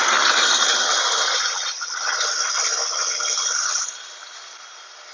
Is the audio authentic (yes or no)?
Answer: yes